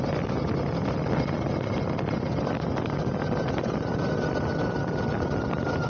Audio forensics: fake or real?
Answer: real